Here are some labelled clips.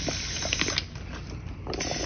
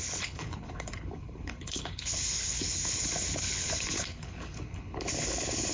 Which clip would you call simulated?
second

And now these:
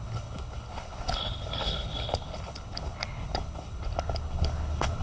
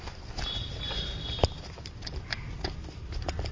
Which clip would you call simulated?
first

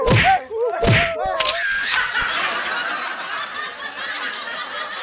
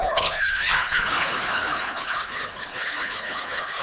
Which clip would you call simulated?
second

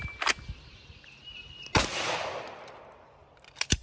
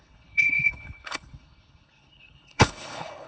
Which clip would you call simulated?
second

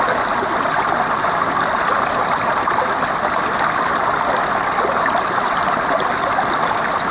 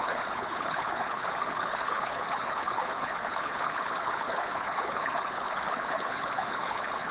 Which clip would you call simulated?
second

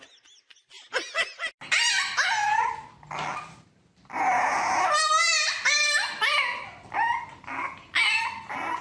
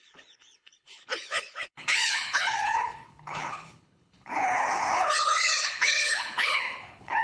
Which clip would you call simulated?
second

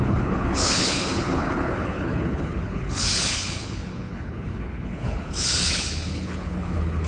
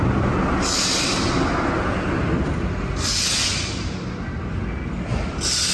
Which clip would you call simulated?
first